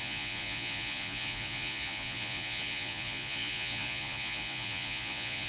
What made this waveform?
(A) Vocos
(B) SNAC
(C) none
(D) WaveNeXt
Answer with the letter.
A